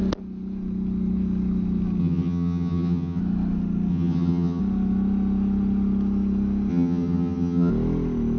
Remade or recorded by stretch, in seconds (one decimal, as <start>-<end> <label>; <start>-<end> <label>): 0.0-2.0 recorded; 2.0-3.2 remade; 3.2-3.9 recorded; 3.9-4.6 remade; 4.6-6.7 recorded; 6.7-7.7 remade; 7.7-8.4 recorded

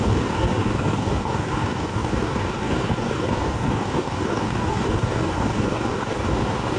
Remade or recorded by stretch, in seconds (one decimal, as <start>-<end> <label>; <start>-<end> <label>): 0.0-6.8 remade

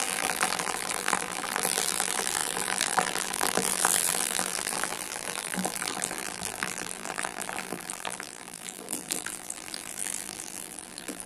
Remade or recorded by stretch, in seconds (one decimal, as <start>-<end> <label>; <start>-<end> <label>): 0.0-11.3 remade

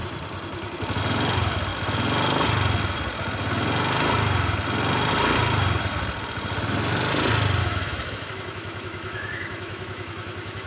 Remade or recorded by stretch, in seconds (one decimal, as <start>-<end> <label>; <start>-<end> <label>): 0.0-7.6 recorded; 7.6-10.7 remade

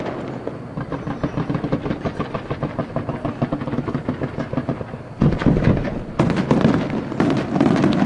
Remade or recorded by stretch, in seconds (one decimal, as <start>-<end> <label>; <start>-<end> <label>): 0.0-8.1 recorded

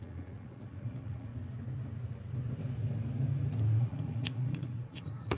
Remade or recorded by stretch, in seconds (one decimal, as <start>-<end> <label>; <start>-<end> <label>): 0.0-1.3 remade; 1.3-3.8 recorded; 3.8-5.4 remade

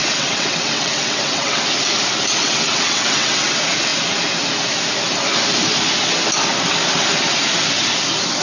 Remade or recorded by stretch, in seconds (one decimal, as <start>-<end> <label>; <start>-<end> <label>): 0.0-1.6 remade; 1.6-2.4 recorded; 2.4-3.5 remade; 3.5-8.4 recorded

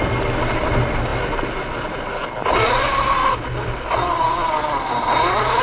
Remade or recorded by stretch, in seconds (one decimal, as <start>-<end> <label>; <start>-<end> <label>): 0.0-5.6 recorded